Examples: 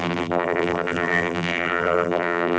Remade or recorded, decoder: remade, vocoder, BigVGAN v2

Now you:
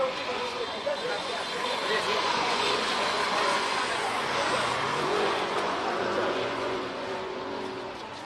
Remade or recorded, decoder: remade, vocoder, Vocos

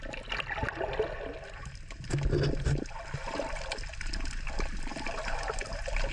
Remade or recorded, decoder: recorded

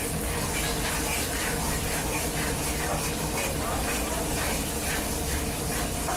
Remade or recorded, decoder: recorded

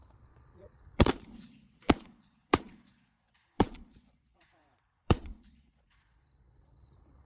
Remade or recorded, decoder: remade, vocoder, Vocos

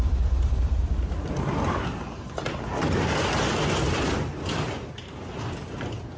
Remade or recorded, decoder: recorded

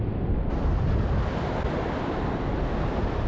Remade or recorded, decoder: recorded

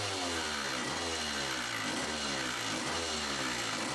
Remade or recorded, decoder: recorded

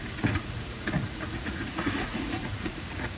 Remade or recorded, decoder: remade, vocoder, Vocos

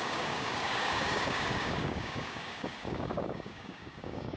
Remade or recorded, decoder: remade, codec, DAC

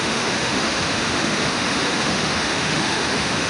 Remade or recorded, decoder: remade, autoencoder, DAC-VAE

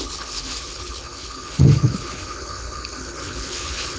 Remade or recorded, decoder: remade, codec, HILCodec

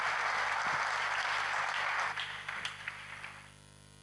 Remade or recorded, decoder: recorded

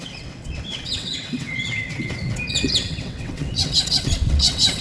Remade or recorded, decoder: remade, vocoder, WaveNeXt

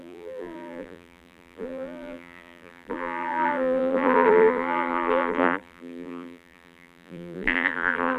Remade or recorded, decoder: remade, vocoder, BigVGAN v2